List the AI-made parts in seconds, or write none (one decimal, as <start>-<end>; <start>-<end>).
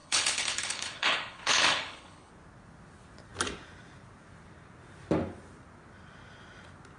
0.0-2.3